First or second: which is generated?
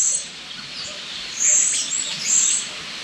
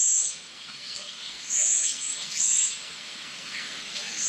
second